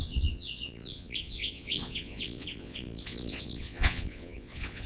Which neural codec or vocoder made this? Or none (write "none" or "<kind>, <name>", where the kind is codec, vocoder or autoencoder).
vocoder, Vocos